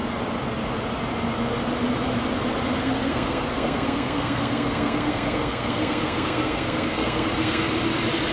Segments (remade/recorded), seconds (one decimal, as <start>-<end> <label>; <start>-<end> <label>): 0.0-2.8 recorded; 2.8-7.6 remade; 7.6-8.3 recorded

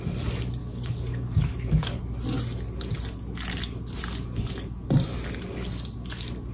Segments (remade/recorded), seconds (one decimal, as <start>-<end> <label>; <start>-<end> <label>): 0.0-0.6 recorded; 0.6-2.0 remade; 2.0-6.5 recorded

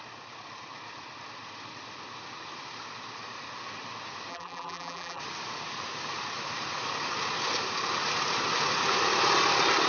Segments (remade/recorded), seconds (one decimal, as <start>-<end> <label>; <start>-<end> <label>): 0.0-4.3 recorded; 4.3-5.2 remade; 5.2-9.9 recorded

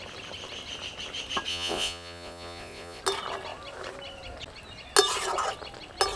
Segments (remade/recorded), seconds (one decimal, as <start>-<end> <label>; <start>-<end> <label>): 0.0-1.5 recorded; 1.5-3.0 remade; 3.0-6.2 recorded

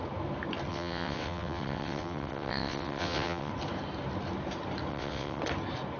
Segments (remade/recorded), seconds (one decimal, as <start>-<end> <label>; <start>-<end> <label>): 0.0-0.7 recorded; 0.7-3.5 remade; 3.5-4.9 recorded; 4.9-5.4 remade; 5.4-6.0 recorded